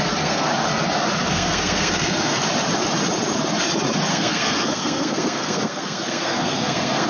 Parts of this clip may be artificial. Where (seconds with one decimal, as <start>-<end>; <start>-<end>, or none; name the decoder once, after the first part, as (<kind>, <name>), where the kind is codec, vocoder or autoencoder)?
0.0-0.5 (codec, SNAC); 1.3-2.4; 4.1-7.1